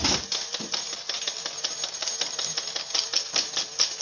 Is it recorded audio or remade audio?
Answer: recorded